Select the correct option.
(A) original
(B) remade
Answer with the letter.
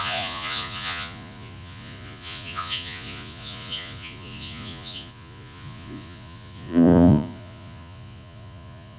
B